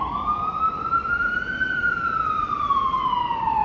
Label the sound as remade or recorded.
remade